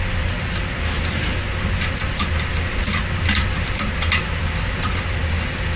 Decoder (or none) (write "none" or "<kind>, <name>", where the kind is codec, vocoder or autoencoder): none